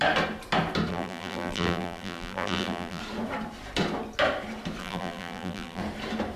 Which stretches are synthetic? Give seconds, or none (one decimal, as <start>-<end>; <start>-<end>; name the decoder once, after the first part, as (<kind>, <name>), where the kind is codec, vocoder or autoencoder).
0.9-3.0 (vocoder, BigVGAN v2); 4.8-5.8